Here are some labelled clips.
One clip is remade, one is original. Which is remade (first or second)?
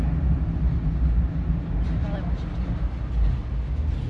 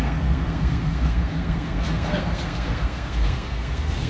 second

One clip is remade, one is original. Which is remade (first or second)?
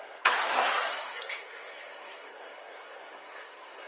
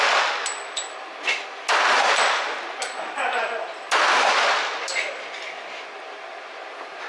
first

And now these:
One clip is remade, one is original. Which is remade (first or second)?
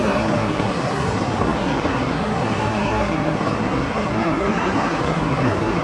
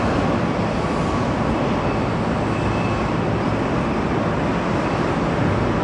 first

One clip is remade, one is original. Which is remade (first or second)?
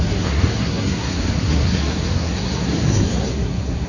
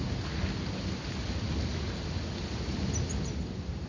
first